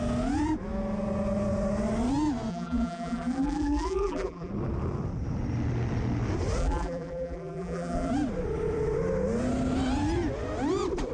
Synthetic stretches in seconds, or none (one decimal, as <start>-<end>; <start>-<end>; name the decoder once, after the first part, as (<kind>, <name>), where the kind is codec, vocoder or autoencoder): 2.5-4.5 (vocoder, BigVGAN v2); 6.6-8.1